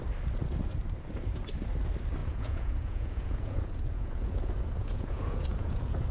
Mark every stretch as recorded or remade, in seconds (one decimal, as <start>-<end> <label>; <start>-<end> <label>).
0.0-2.2 recorded; 2.2-6.1 remade